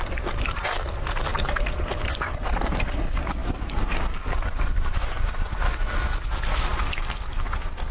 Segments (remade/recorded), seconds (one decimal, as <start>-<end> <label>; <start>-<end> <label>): 0.0-1.3 recorded; 1.3-3.0 remade; 3.0-3.4 recorded; 3.4-5.2 remade; 5.2-7.9 recorded